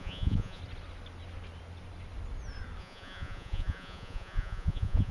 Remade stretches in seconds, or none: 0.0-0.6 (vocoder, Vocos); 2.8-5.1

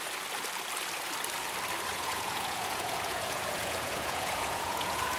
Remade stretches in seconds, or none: 1.9-5.2 (vocoder, Vocos)

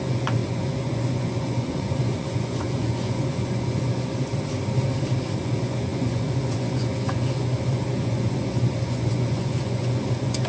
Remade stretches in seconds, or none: 0.0-4.3 (vocoder, Vocos); 5.4-10.5

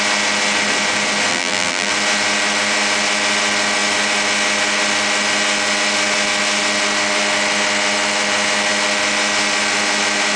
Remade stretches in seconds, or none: 1.3-1.9 (vocoder, BigVGAN v2)

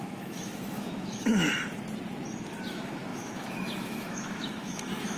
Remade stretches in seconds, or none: 0.0-1.5 (autoencoder, DAC-VAE); 2.7-5.2

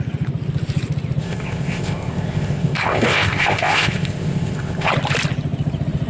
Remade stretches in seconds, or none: 1.2-4.9 (codec, ZipCodec)

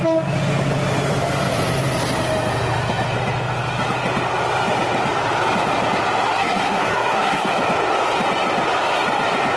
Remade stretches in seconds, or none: 6.4-7.5 (codec, SNAC)